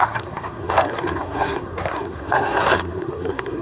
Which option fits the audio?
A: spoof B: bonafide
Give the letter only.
A